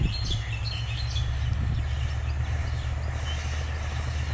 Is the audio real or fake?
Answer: real